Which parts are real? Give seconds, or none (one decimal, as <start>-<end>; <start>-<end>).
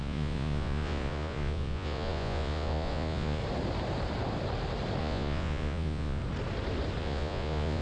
3.4-5.0; 6.2-7.0